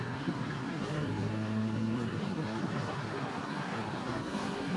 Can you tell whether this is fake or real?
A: fake